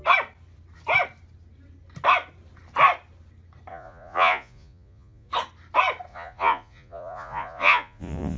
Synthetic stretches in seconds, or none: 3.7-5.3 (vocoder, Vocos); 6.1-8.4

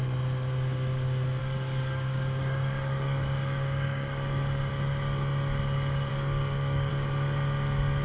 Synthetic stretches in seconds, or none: 1.4-4.7 (codec, DAC); 6.1-6.9